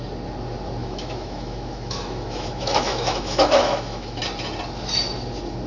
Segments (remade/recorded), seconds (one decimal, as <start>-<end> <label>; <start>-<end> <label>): 0.0-0.8 recorded; 0.8-4.2 remade; 4.2-5.7 recorded